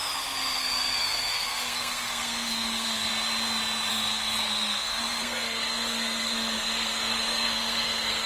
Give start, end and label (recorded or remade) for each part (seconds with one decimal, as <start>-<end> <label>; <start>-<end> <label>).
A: 0.0-3.1 remade; 3.1-3.9 recorded; 3.9-8.3 remade